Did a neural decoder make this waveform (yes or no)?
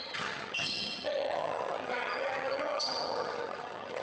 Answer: yes